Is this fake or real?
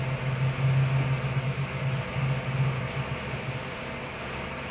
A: real